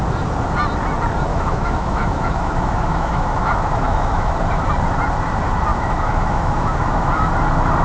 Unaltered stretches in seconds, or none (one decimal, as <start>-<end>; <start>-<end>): 0.0-1.3; 4.3-5.7; 7.3-7.8